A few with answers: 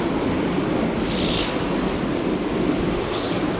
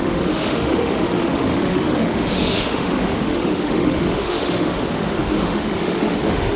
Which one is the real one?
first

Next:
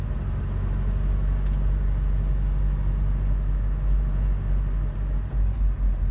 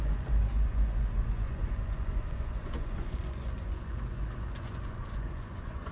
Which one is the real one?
first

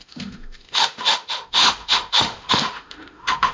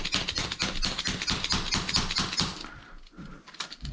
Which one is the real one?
second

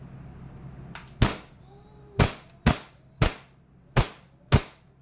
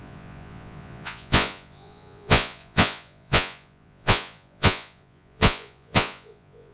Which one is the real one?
first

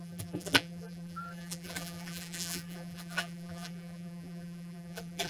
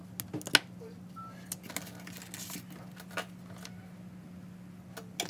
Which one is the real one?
second